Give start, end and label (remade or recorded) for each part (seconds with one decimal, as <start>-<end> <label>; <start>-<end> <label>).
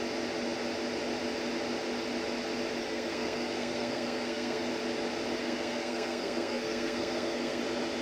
0.0-2.8 recorded; 2.8-4.7 remade; 4.7-5.4 recorded; 5.4-7.6 remade; 7.6-8.0 recorded